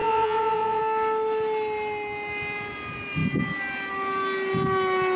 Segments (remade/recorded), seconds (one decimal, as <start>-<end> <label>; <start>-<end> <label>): 0.0-0.8 remade; 0.8-5.2 recorded

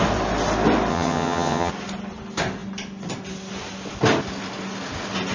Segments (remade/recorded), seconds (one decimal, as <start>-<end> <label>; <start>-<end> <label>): 0.0-0.9 recorded; 0.9-1.7 remade; 1.7-5.3 recorded

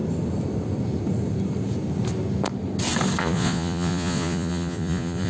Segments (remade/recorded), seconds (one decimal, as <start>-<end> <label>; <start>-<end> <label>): 0.0-3.2 recorded; 3.2-5.3 remade

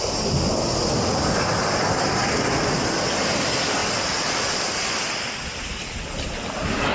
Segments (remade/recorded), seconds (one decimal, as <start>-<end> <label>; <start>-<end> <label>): 0.0-6.9 recorded